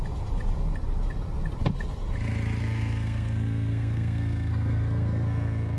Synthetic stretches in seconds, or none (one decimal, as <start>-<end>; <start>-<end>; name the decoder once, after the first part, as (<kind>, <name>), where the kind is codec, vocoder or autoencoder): 2.6-5.8 (codec, SNAC)